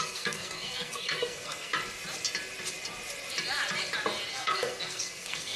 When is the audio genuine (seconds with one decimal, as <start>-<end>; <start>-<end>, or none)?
1.7-4.3